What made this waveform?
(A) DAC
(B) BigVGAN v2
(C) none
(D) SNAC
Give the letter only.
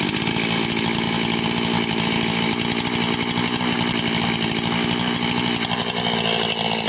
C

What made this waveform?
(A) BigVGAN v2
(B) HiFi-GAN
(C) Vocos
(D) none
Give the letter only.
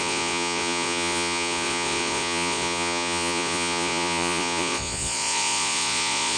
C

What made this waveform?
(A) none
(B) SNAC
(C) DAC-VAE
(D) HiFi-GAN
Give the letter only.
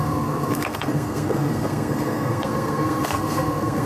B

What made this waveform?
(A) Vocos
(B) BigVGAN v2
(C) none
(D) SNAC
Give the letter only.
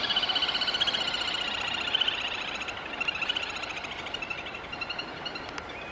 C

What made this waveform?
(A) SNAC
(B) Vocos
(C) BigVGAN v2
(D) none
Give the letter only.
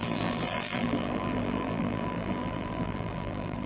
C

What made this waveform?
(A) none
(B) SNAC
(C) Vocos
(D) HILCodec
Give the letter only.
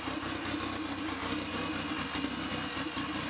A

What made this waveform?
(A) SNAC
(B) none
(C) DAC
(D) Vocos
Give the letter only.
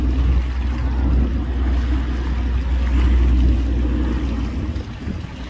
B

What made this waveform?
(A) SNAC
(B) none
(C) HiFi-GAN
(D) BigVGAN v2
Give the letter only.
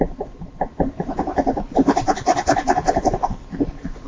B